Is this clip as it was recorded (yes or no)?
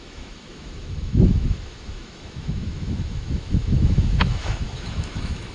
no